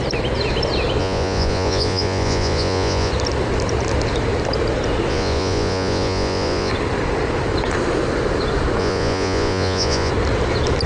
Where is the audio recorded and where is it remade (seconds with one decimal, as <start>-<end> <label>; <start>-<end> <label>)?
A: 0.0-1.0 recorded; 1.0-3.1 remade; 3.1-5.1 recorded; 5.1-6.7 remade; 6.7-8.8 recorded; 8.8-10.1 remade; 10.1-10.9 recorded